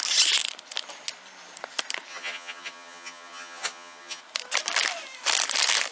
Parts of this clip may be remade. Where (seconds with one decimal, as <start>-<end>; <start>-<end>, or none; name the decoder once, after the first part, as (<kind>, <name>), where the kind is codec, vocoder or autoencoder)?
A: 2.1-4.2 (vocoder, HiFi-GAN)